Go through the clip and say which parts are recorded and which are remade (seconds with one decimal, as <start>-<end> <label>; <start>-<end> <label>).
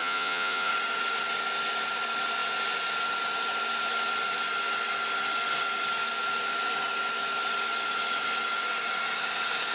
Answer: 0.0-0.7 remade; 0.7-9.7 recorded